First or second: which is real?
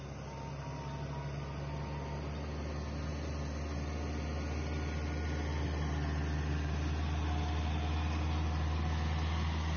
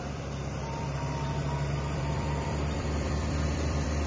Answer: first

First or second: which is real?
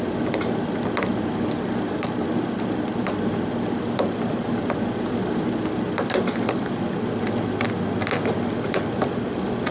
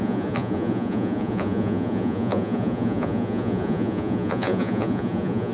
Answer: first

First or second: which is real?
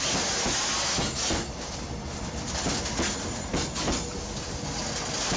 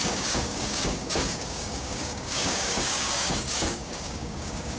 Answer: first